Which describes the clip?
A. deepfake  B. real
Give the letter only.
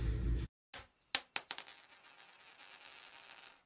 B